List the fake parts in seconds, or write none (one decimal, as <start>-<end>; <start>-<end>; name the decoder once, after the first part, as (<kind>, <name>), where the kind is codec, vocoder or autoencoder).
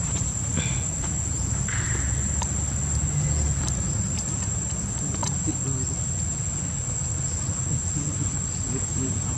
0.0-2.8 (vocoder, BigVGAN v2); 3.6-5.2; 8.8-9.4